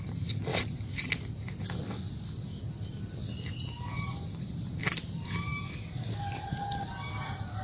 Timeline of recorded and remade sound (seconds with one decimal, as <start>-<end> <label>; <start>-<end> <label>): 0.0-7.6 recorded